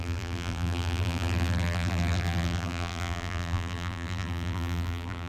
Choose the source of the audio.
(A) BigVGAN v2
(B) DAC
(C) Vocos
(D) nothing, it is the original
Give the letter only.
A